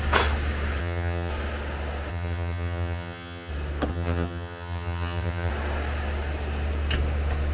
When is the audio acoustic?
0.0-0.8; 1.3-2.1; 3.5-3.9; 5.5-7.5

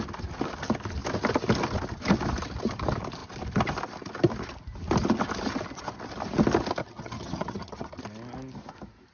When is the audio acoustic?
0.0-6.8; 8.0-9.1

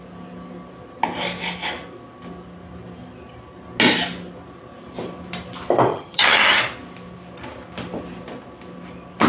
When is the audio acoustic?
0.0-5.9; 6.6-9.3

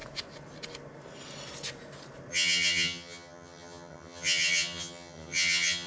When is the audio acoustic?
0.0-2.3

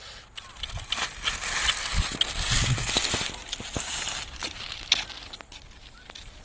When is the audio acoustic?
0.0-6.4

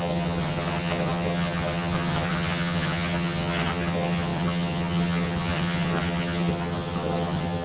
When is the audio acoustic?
none

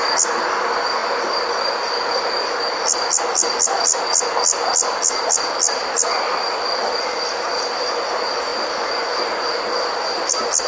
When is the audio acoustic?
0.0-10.7